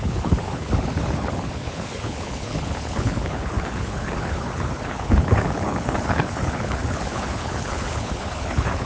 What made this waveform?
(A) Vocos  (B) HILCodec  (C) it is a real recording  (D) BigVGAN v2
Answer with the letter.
B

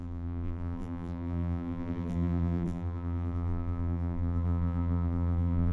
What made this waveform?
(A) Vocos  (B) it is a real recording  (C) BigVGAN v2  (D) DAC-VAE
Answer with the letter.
C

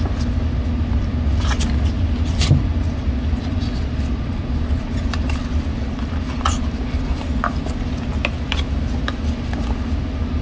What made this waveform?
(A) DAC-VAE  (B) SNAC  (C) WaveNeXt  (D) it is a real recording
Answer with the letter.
D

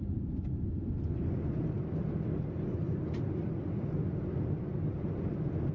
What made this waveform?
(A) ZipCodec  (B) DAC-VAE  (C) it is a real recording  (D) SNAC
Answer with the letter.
C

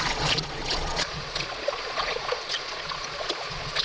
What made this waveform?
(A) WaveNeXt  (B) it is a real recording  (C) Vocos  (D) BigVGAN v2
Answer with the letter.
C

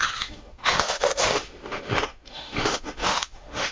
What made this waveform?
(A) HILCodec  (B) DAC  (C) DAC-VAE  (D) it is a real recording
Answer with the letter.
C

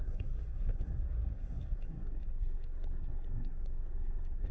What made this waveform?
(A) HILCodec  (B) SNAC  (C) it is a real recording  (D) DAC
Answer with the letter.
B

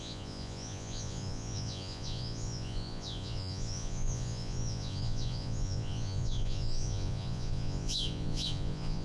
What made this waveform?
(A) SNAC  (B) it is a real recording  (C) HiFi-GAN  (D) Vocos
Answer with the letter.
D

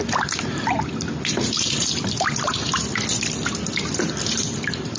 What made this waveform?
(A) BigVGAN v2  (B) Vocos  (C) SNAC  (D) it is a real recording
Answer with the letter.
D